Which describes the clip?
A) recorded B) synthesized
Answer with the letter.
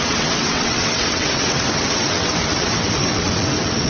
B